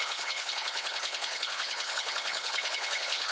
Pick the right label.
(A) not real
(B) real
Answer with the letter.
A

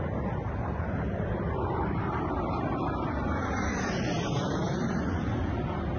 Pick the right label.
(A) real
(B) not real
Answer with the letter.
B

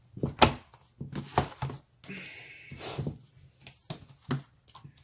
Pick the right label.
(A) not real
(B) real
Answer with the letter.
B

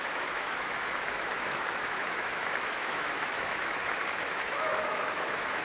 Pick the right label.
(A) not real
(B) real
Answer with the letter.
A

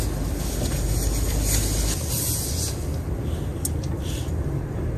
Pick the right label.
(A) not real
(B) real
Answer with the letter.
B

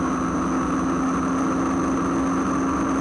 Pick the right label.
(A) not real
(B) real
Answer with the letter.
B